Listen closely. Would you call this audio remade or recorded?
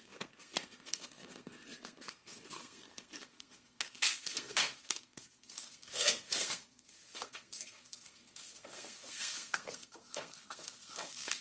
remade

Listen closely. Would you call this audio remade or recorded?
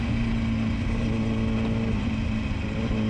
recorded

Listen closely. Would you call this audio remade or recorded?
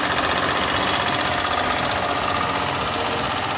recorded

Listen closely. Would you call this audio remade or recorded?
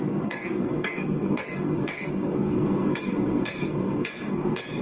remade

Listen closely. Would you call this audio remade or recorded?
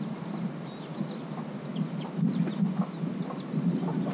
recorded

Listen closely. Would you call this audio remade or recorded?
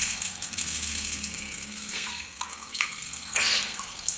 remade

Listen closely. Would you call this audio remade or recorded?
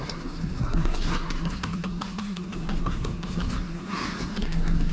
remade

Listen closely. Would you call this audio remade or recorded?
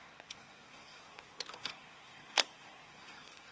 remade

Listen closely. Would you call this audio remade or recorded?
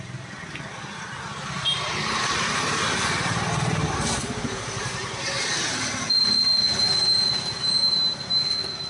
recorded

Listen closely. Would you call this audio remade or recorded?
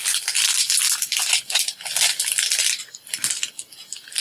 recorded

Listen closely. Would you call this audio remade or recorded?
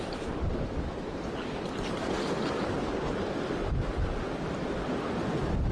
recorded